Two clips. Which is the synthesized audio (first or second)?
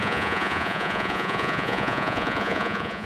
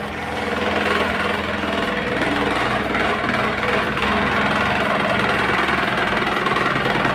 first